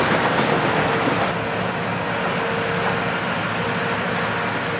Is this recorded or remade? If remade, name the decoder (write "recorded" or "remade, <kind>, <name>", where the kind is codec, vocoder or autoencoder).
recorded